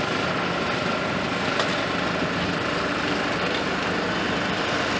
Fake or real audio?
real